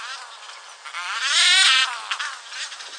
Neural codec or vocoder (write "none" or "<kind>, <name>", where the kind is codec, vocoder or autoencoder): none